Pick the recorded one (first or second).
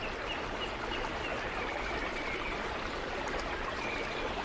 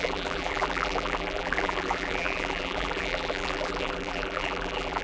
first